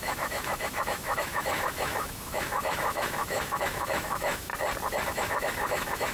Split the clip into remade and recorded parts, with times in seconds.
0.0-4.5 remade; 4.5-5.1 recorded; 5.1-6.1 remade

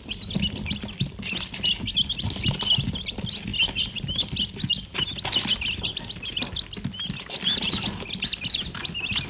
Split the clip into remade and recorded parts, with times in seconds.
0.0-9.3 recorded

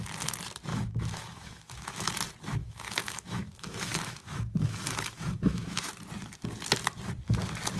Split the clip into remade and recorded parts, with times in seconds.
0.0-0.7 recorded; 0.7-2.1 remade; 2.1-2.6 recorded; 2.6-5.9 remade; 5.9-7.8 recorded

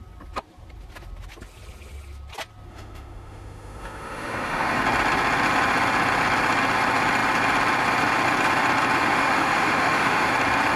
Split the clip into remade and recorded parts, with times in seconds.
0.0-2.7 recorded; 2.7-4.8 remade; 4.8-9.0 recorded; 9.0-10.3 remade; 10.3-10.8 recorded